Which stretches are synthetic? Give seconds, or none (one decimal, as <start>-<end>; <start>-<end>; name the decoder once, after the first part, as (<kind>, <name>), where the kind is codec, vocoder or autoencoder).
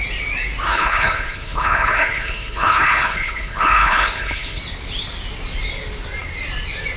0.7-4.6 (codec, HILCodec)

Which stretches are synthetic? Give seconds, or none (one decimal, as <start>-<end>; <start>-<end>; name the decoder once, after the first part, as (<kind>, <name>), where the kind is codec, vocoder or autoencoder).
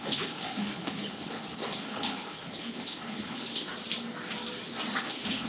0.0-3.7 (codec, HILCodec); 5.0-5.5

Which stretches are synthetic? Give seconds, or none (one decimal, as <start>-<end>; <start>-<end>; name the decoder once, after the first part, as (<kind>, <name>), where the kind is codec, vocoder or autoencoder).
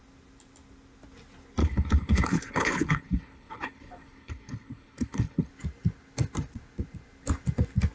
1.6-5.5 (codec, HILCodec)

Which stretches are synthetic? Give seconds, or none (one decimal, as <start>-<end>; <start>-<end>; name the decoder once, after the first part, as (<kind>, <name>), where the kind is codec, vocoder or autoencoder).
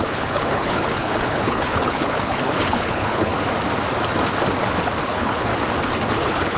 0.0-3.3 (codec, HILCodec); 5.0-5.5; 6.1-6.6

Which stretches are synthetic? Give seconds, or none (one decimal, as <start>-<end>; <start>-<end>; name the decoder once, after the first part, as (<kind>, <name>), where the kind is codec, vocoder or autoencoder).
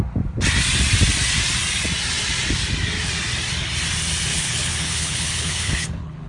4.3-6.3 (codec, HILCodec)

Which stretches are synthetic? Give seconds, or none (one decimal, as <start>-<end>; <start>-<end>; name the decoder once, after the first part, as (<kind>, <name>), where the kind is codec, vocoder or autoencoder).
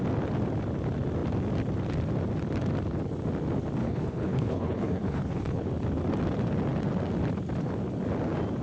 3.8-5.7 (codec, HILCodec)